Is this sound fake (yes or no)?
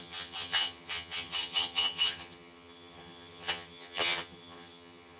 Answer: yes